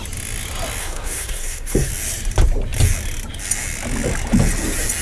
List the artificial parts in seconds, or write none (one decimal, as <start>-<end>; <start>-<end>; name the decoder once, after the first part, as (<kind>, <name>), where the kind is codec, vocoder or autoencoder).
0.8-1.9 (codec, SNAC)